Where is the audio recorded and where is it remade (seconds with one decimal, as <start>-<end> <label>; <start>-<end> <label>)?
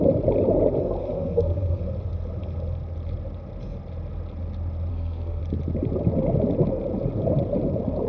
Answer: 0.0-1.0 recorded; 1.0-1.8 remade; 1.8-4.9 recorded; 4.9-5.4 remade; 5.4-8.1 recorded